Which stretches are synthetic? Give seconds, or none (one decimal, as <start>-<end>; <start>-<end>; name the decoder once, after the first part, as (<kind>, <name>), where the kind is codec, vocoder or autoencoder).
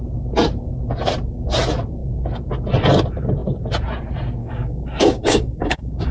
4.4-6.1 (codec, DAC)